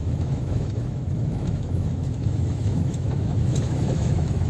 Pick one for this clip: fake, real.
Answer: fake